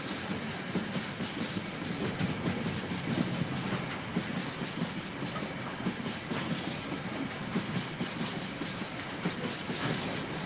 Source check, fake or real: real